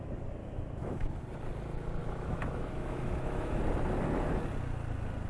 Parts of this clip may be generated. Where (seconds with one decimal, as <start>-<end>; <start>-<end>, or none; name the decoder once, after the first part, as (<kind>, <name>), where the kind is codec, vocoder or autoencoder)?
0.4-1.2 (autoencoder, DAC-VAE); 2.0-3.6